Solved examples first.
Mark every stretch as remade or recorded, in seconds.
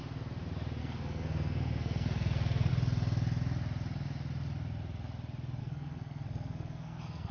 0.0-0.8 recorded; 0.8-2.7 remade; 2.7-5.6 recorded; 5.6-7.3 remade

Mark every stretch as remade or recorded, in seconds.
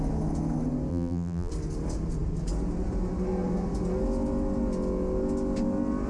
0.0-0.9 recorded; 0.9-1.5 remade; 1.5-6.1 recorded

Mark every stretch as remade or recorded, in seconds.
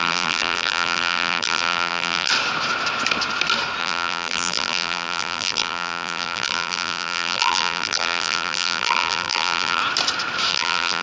0.0-2.3 remade; 2.3-3.8 recorded; 3.8-9.8 remade; 9.8-10.5 recorded; 10.5-11.0 remade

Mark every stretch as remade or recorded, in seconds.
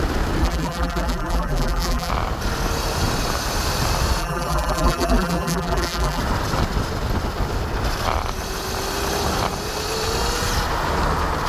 0.0-0.4 recorded; 0.4-2.1 remade; 2.1-4.2 recorded; 4.2-6.2 remade; 6.2-11.5 recorded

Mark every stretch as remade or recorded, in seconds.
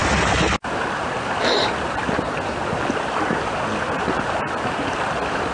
0.0-5.5 recorded